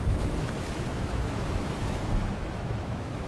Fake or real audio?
fake